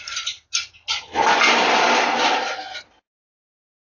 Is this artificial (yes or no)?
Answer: no